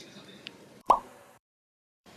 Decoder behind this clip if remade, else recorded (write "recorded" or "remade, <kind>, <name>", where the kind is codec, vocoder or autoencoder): remade, vocoder, BigVGAN v2